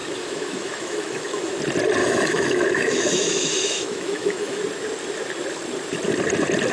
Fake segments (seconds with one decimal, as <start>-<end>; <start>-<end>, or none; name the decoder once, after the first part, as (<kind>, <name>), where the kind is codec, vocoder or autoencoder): 0.0-1.6 (autoencoder, DAC-VAE); 2.0-4.6

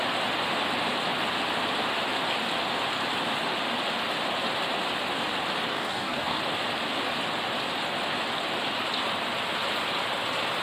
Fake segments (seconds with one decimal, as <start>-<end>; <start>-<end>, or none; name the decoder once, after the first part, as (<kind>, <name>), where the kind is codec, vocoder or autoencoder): 5.7-6.4 (codec, DAC)

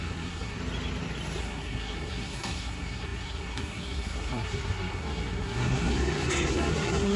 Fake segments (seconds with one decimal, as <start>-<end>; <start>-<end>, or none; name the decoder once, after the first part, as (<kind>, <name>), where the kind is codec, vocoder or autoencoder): 0.0-0.6 (codec, SNAC); 1.4-7.2

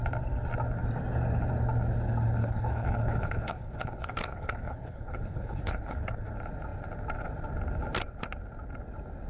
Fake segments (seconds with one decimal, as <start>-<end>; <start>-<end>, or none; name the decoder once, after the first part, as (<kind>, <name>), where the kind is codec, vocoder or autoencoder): 2.4-6.3 (codec, HILCodec)